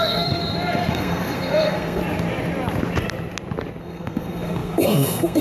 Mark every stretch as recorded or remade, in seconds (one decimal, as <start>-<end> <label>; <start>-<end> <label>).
0.0-0.4 remade; 0.4-0.9 recorded; 0.9-2.0 remade; 2.0-3.8 recorded; 3.8-5.4 remade